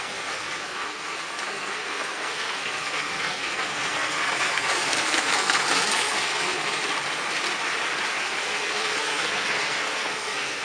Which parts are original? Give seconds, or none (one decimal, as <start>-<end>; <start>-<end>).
6.8-8.2